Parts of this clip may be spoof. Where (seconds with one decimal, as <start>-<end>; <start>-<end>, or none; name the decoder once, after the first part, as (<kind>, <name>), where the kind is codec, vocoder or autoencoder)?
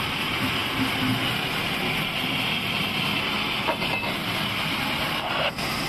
none